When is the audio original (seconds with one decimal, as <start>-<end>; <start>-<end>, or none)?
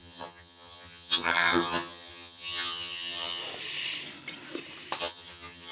3.4-5.0